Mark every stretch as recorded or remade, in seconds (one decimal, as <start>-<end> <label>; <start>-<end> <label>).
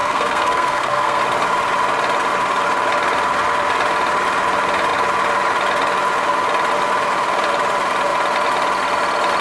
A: 0.0-1.2 remade; 1.2-9.4 recorded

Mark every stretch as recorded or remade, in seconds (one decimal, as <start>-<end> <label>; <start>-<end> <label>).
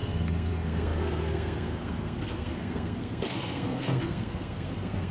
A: 0.0-5.1 remade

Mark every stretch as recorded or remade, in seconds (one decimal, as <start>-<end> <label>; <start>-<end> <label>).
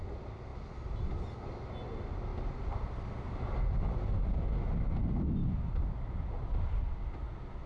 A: 0.0-7.7 recorded